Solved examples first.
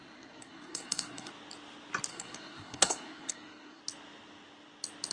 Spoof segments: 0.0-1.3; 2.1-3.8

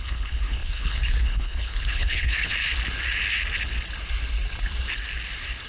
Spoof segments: 0.0-2.5